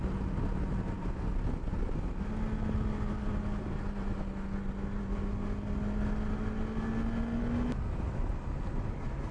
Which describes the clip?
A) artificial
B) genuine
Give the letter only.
B